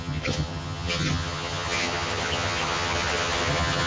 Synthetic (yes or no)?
yes